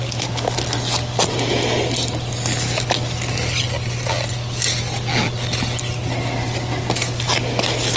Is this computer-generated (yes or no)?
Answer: no